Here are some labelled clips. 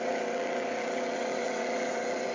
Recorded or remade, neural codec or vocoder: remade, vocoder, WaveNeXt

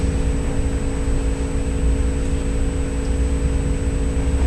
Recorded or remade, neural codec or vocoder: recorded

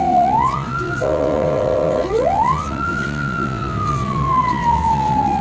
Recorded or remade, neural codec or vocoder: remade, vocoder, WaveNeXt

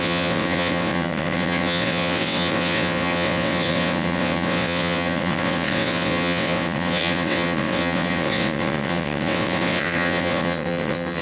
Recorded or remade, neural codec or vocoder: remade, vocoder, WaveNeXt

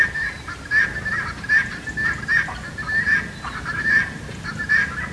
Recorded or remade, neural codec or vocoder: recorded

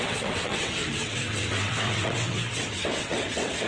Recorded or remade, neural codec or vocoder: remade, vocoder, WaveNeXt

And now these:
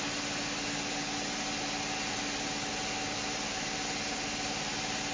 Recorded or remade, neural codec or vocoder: recorded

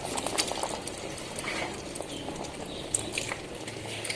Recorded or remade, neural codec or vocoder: recorded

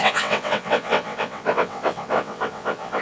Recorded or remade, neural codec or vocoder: remade, vocoder, WaveNeXt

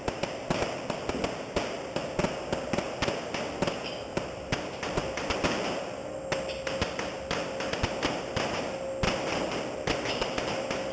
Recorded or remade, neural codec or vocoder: recorded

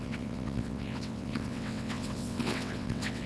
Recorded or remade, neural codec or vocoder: remade, vocoder, WaveNeXt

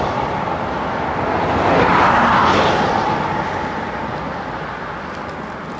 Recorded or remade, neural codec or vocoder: recorded